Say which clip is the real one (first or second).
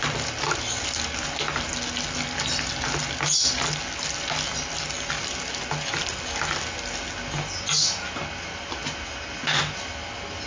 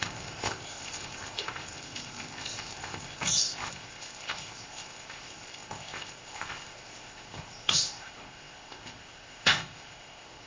first